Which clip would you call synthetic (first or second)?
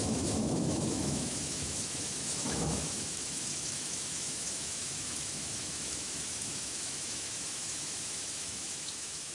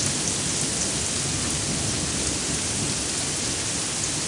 first